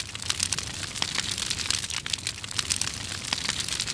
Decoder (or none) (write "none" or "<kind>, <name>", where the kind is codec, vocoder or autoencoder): none